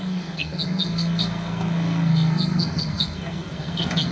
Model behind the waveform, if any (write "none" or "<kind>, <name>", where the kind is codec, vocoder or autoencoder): codec, SNAC